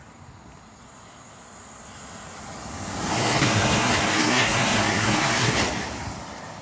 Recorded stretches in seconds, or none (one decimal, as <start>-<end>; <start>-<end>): 0.0-3.1; 5.5-6.6